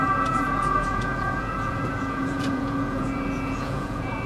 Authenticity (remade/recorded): remade